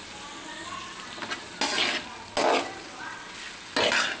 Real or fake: real